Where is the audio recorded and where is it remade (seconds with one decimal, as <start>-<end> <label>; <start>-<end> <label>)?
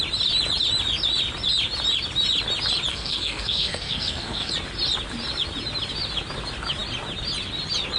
0.0-2.9 recorded; 2.9-4.5 remade; 4.5-8.0 recorded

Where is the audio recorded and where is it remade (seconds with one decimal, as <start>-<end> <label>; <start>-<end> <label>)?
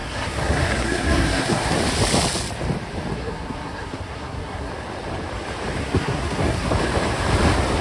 0.0-1.7 remade; 1.7-3.1 recorded; 3.1-4.7 remade; 4.7-5.8 recorded; 5.8-6.7 remade; 6.7-7.8 recorded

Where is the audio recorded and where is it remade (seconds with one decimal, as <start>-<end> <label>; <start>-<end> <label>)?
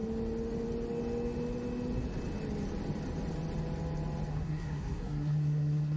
0.0-4.3 recorded; 4.3-6.0 remade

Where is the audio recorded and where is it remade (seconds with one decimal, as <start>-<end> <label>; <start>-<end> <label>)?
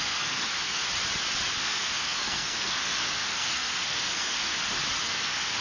0.0-0.8 remade; 0.8-1.6 recorded; 1.6-4.5 remade; 4.5-5.0 recorded; 5.0-5.6 remade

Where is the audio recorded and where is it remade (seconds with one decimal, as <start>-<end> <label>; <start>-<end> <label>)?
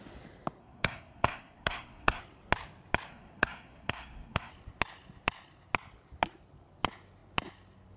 0.0-0.6 recorded; 0.6-2.2 remade; 2.2-3.1 recorded; 3.1-4.5 remade; 4.5-8.0 recorded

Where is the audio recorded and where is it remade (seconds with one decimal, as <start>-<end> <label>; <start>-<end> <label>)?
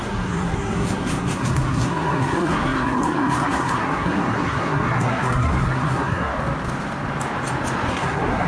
0.0-6.3 remade; 6.3-7.9 recorded; 7.9-8.5 remade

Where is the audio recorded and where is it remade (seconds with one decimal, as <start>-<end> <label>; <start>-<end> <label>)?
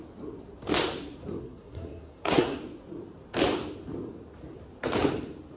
0.0-1.4 recorded; 1.4-2.6 remade; 2.6-5.6 recorded